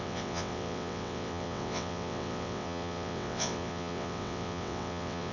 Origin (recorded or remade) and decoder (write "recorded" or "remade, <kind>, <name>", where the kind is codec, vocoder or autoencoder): remade, vocoder, WaveNeXt